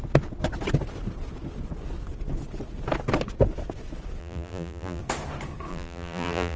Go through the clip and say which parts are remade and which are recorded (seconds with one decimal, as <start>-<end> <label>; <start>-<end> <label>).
0.0-4.2 recorded; 4.2-5.0 remade; 5.0-5.7 recorded; 5.7-6.6 remade